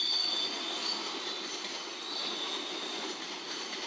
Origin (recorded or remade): recorded